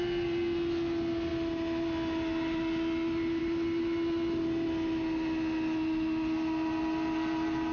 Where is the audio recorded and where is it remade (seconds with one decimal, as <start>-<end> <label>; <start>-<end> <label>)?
0.0-7.7 recorded